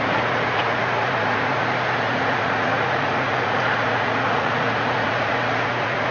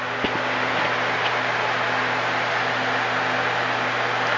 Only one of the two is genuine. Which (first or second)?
second